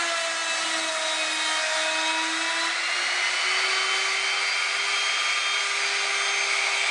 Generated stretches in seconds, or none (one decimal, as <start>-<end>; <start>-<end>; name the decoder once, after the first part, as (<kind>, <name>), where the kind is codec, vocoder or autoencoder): none